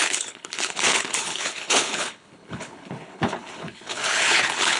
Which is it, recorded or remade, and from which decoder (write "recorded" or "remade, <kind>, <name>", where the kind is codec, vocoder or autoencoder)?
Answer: remade, codec, HILCodec